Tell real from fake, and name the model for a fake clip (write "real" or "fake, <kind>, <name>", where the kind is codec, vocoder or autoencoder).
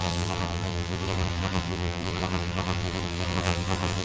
fake, vocoder, BigVGAN v2